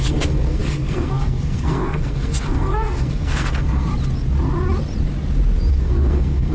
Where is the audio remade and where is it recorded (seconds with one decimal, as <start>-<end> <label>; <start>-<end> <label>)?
0.0-3.9 remade; 3.9-5.7 recorded; 5.7-6.5 remade

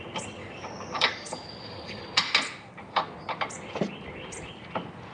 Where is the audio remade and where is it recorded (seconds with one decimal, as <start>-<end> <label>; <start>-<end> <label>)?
0.0-0.4 recorded; 0.4-2.0 remade; 2.0-5.1 recorded

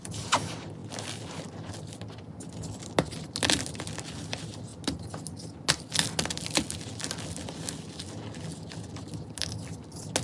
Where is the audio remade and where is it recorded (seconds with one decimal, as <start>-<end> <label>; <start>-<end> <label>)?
0.0-10.2 recorded

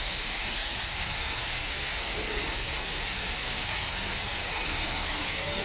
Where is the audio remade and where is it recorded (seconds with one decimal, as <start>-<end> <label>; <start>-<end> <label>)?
0.0-5.6 remade